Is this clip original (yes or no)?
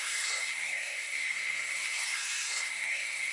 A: no